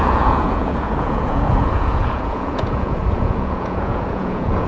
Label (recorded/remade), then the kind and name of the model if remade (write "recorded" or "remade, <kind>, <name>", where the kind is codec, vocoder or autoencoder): remade, vocoder, Vocos